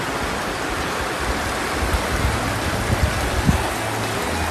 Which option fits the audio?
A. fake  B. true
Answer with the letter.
B